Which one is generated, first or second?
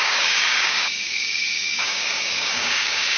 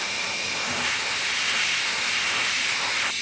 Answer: first